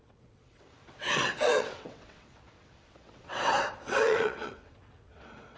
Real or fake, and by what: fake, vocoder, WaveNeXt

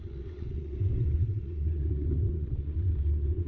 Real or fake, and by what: fake, vocoder, WaveNeXt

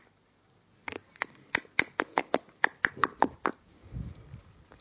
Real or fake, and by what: real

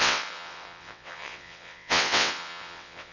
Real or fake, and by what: fake, vocoder, WaveNeXt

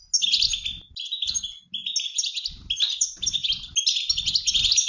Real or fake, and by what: real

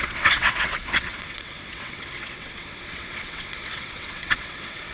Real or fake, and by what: fake, vocoder, WaveNeXt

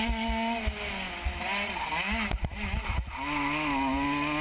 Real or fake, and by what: real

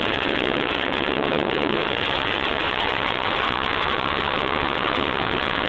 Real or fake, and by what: fake, vocoder, WaveNeXt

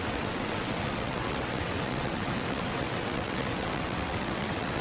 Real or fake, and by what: fake, vocoder, WaveNeXt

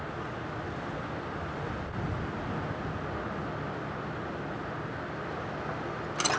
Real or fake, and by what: real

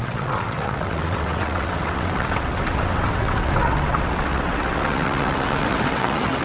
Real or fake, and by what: fake, vocoder, WaveNeXt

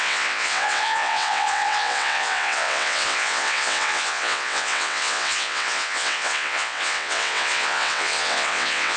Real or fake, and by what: fake, vocoder, WaveNeXt